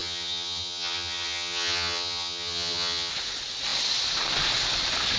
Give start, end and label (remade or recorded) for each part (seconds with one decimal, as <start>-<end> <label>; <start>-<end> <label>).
0.0-3.1 remade; 3.1-5.2 recorded